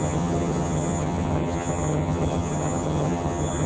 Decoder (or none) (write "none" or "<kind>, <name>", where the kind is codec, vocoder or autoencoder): vocoder, HiFi-GAN